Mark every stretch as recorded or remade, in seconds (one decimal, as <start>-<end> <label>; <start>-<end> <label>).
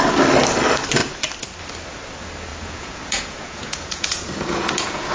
0.0-2.5 recorded; 2.5-5.1 remade